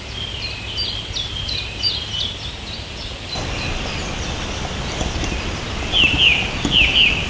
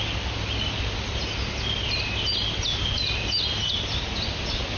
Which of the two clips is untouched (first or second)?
second